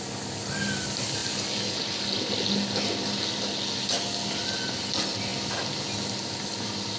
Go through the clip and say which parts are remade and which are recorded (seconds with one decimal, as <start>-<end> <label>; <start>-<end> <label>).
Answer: 0.0-7.0 recorded